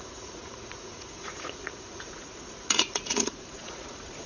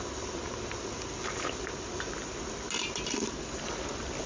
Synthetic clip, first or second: first